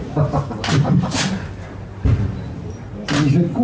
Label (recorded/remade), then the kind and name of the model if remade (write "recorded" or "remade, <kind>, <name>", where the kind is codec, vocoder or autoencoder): recorded